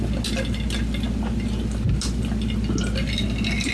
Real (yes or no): yes